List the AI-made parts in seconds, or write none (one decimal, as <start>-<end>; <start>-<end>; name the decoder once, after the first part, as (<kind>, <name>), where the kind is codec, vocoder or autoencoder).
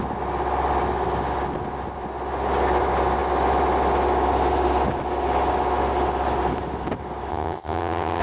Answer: 7.3-8.2 (vocoder, HiFi-GAN)